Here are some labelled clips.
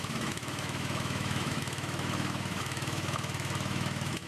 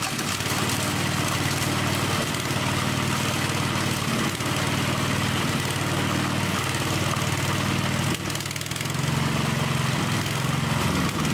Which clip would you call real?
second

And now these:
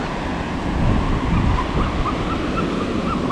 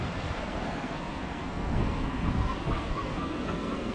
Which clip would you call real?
first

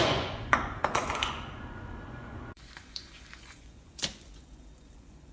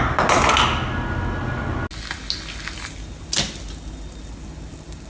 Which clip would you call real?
second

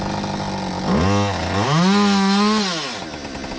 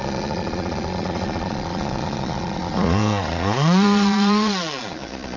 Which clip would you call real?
first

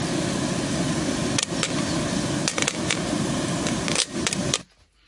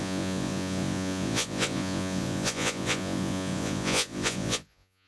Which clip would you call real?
first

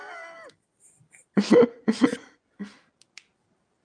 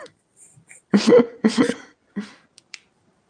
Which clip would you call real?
first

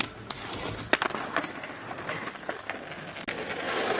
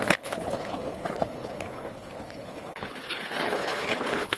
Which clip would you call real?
first